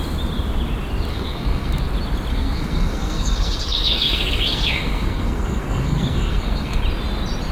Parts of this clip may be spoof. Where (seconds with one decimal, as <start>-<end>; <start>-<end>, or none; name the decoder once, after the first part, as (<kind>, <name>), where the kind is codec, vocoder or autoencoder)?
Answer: 1.1-1.8 (codec, SNAC); 2.3-6.8